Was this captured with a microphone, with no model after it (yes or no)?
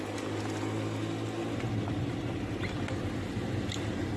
yes